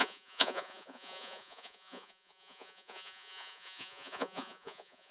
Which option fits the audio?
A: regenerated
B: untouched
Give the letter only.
A